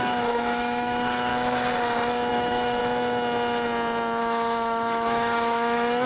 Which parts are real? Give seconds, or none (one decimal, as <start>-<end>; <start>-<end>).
1.3-2.3; 2.8-4.2